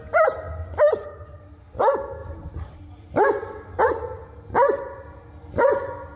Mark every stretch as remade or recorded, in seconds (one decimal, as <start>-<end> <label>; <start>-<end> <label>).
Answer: 0.0-6.2 recorded